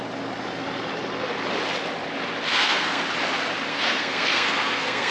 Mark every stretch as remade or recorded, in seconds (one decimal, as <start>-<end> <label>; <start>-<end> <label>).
0.0-2.5 recorded; 2.5-3.0 remade; 3.0-3.7 recorded; 3.7-5.1 remade